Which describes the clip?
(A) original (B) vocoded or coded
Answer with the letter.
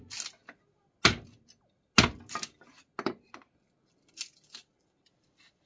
A